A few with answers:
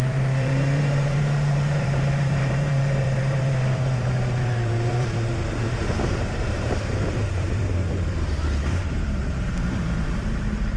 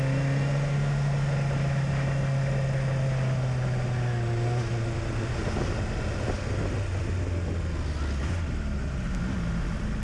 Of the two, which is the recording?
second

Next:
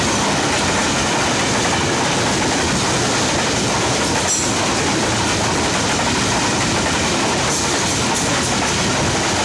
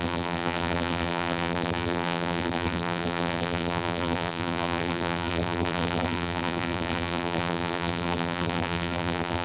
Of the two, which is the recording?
first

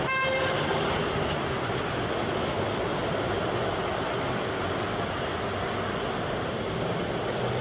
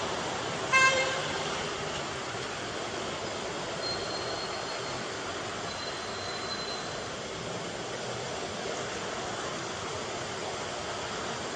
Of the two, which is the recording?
first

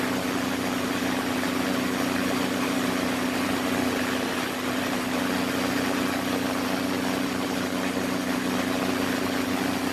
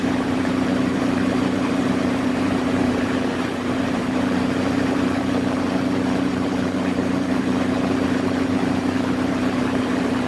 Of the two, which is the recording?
first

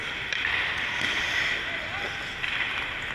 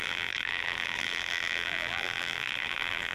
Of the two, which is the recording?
first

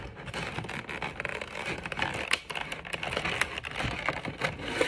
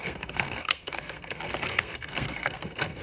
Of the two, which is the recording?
first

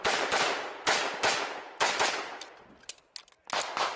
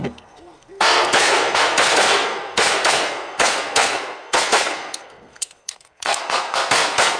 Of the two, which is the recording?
first